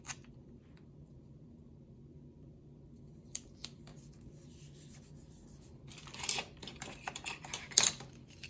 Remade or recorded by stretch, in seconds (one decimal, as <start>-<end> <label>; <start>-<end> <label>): 0.0-8.5 remade